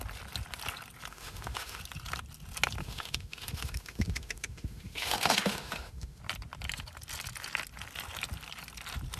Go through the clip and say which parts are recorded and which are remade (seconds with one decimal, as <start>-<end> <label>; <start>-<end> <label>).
0.0-1.1 recorded; 1.1-1.8 remade; 1.8-2.8 recorded; 2.8-6.2 remade; 6.2-9.2 recorded